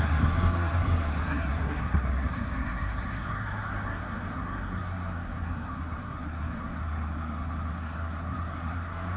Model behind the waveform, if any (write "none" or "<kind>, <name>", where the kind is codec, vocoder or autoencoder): codec, SNAC